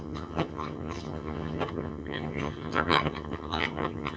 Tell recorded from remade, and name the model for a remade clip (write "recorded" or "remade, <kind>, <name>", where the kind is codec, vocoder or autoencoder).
remade, vocoder, HiFi-GAN